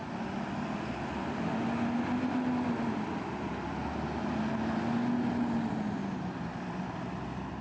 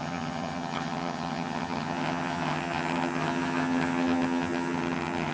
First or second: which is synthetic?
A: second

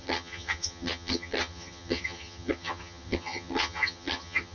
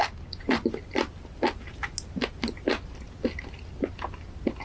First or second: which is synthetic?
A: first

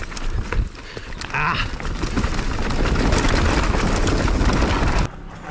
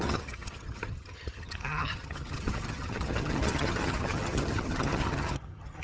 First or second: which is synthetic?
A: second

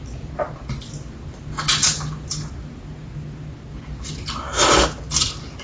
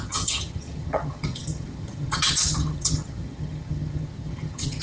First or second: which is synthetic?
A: second